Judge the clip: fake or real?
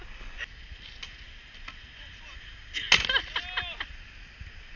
real